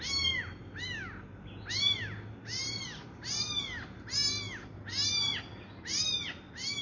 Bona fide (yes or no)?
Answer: yes